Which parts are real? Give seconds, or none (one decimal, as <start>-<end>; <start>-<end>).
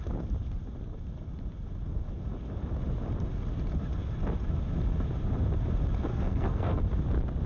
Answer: 0.0-6.1; 6.8-7.5